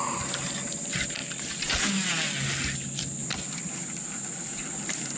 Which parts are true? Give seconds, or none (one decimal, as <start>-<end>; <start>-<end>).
0.0-5.2